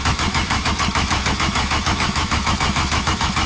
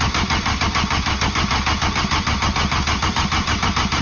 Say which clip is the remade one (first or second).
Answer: first